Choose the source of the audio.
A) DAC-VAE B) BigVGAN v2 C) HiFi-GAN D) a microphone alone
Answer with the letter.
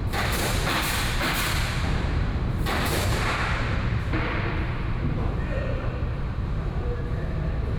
B